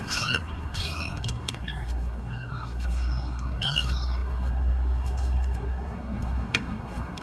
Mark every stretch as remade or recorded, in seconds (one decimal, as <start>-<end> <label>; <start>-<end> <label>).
0.0-7.2 remade

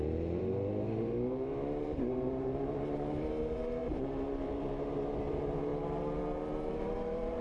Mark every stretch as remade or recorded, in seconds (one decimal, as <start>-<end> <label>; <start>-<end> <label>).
0.0-5.7 remade; 5.7-6.7 recorded; 6.7-7.4 remade

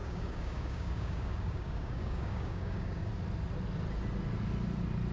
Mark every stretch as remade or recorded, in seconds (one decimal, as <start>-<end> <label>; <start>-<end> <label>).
0.0-3.1 remade; 3.1-5.1 recorded

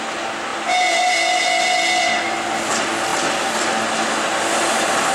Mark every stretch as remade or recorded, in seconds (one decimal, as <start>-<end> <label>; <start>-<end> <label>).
0.0-5.1 recorded

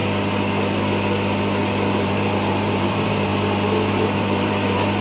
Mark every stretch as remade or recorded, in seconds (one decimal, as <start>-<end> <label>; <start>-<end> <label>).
0.0-1.9 recorded; 1.9-3.3 remade; 3.3-3.9 recorded; 3.9-5.0 remade

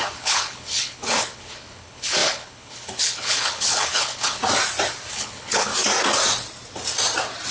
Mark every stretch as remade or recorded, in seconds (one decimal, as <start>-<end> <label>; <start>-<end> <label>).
0.0-4.4 remade; 4.4-5.1 recorded; 5.1-5.7 remade; 5.7-7.5 recorded

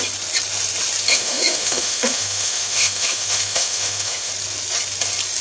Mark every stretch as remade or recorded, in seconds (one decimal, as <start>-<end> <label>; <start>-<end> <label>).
0.0-1.1 recorded; 1.1-4.3 remade; 4.3-5.4 recorded